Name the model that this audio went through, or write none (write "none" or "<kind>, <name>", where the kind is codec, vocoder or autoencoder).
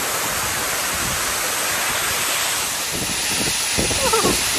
none